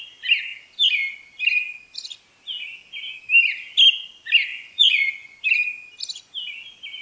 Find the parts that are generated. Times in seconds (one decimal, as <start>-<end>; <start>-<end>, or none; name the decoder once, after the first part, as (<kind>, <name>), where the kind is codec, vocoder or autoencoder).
4.5-5.4 (vocoder, Vocos)